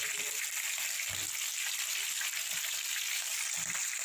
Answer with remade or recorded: recorded